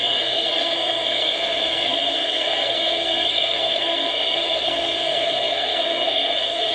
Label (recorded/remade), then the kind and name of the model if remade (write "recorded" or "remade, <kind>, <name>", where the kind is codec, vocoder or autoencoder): remade, codec, SNAC